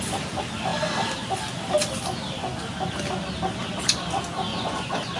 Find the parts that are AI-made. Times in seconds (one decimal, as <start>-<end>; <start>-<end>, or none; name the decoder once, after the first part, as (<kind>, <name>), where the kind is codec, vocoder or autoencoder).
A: 4.5-5.2 (vocoder, Vocos)